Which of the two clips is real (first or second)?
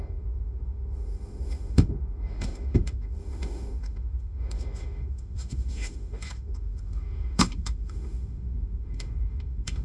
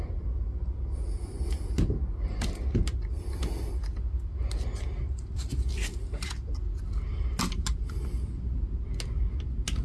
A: second